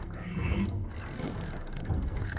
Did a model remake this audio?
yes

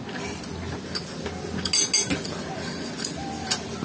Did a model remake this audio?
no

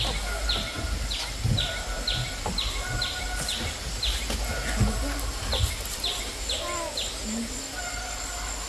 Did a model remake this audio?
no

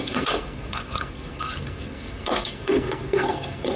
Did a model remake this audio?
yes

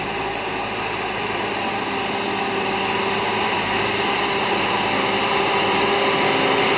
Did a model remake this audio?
no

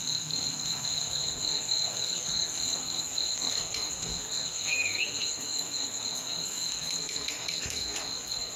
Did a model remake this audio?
yes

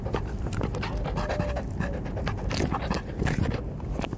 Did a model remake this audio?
no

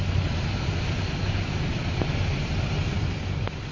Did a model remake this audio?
no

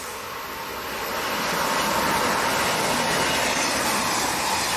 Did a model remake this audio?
no